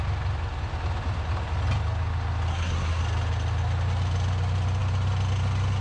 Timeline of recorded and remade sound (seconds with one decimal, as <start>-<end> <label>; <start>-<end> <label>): 0.0-2.5 recorded; 2.5-3.0 remade; 3.0-5.8 recorded